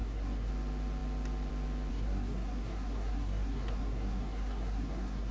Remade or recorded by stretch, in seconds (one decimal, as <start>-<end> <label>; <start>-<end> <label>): 0.0-0.5 remade; 0.5-1.9 recorded; 1.9-5.3 remade